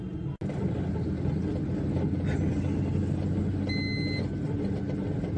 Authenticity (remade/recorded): recorded